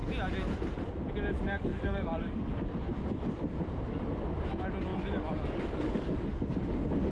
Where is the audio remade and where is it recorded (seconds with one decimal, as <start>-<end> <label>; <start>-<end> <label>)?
0.0-1.7 recorded; 1.7-2.7 remade; 2.7-4.9 recorded; 4.9-6.6 remade; 6.6-7.1 recorded